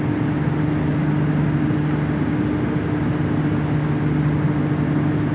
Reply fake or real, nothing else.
real